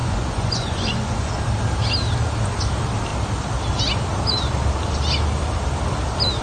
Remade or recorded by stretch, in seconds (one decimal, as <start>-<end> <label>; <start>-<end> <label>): 0.0-1.3 remade; 1.3-6.4 recorded